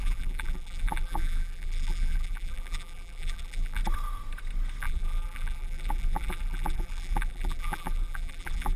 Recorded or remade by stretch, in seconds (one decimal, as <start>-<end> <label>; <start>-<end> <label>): 0.0-3.8 remade; 3.8-4.8 recorded; 4.8-8.8 remade